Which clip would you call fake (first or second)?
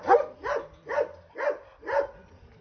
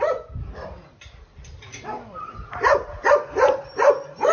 second